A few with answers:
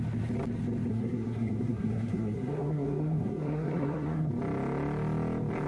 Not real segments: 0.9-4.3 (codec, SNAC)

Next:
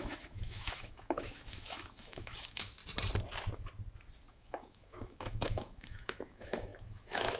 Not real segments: 0.0-2.8 (autoencoder, DAC-VAE); 4.3-7.4

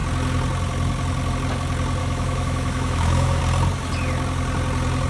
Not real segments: 2.0-3.4 (autoencoder, DAC-VAE)

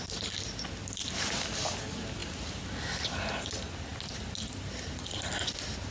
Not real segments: none

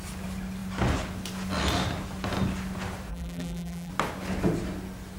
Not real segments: 3.1-3.9 (vocoder, BigVGAN v2)